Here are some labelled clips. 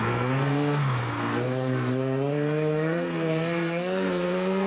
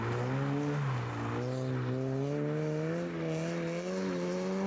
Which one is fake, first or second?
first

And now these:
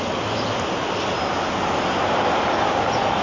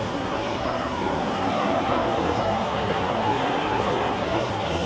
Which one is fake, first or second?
second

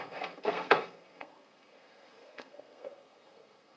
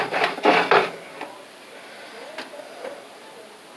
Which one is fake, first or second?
first